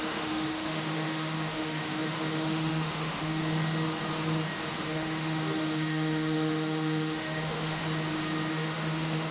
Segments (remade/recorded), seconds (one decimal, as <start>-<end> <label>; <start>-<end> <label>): 0.0-3.4 remade; 3.4-4.8 recorded; 4.8-7.8 remade; 7.8-8.5 recorded; 8.5-9.3 remade